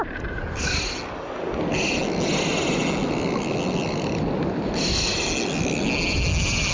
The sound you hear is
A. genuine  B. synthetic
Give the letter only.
A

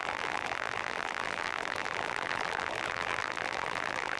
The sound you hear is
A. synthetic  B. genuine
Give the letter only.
A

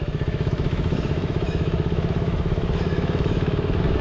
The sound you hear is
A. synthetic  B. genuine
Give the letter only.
A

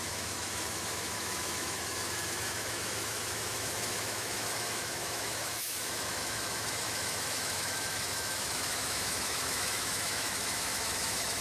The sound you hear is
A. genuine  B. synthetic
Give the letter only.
B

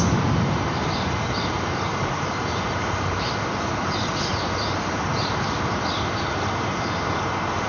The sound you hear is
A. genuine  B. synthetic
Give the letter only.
B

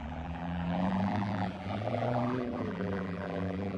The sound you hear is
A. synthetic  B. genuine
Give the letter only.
A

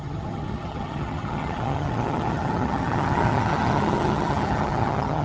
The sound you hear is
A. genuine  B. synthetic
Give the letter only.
B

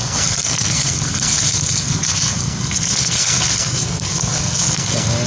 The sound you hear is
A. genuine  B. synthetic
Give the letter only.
B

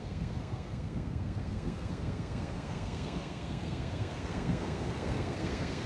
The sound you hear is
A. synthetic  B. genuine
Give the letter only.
A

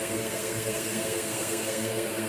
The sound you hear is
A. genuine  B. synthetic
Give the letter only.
B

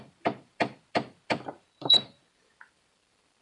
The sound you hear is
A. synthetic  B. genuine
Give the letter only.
A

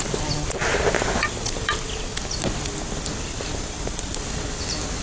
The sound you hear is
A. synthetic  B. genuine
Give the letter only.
B